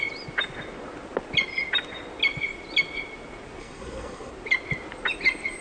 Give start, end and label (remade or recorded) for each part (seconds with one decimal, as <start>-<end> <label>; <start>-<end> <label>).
0.0-3.6 recorded; 3.6-4.3 remade; 4.3-5.6 recorded

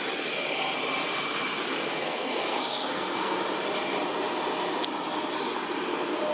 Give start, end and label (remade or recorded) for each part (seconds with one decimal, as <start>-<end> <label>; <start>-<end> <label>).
0.0-1.9 recorded; 1.9-3.4 remade; 3.4-6.3 recorded

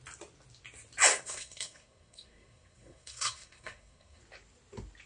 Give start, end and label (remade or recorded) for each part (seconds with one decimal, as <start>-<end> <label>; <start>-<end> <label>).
0.0-1.1 recorded; 1.1-4.2 remade; 4.2-5.1 recorded

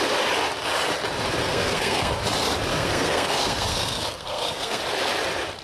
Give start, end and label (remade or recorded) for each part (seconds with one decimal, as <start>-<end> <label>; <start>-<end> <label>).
0.0-1.4 recorded; 1.4-2.1 remade; 2.1-2.7 recorded; 2.7-4.8 remade; 4.8-5.6 recorded

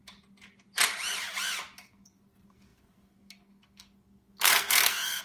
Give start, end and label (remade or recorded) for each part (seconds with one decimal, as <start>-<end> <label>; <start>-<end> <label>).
0.0-1.8 recorded; 1.8-5.2 remade